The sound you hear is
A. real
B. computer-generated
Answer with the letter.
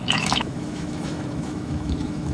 B